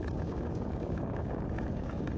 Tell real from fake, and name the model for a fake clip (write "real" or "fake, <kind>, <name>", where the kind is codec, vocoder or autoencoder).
fake, codec, DAC